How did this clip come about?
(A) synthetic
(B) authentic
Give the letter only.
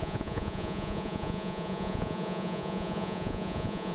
A